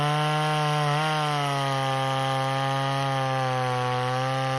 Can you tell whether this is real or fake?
real